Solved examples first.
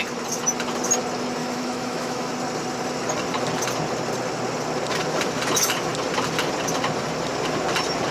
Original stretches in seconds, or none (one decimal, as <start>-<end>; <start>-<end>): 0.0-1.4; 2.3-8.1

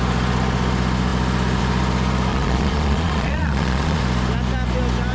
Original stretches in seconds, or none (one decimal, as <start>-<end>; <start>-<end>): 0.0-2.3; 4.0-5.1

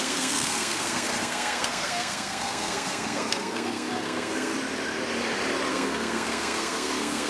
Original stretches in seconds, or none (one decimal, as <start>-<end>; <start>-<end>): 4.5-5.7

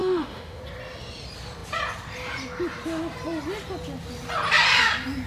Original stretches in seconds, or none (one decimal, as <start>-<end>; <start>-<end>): 0.6-5.3

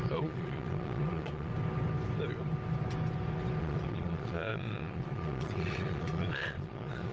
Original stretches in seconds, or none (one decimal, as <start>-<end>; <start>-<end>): 1.5-3.6

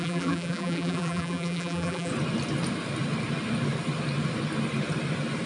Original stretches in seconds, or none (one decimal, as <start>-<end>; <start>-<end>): 2.1-5.5

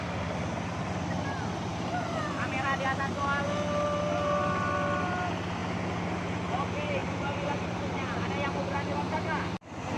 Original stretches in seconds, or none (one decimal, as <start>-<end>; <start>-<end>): 0.0-7.0; 8.2-10.0

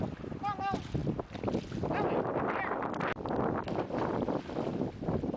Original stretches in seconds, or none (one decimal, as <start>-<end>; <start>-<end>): 0.0-5.4